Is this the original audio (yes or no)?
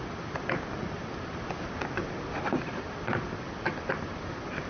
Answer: yes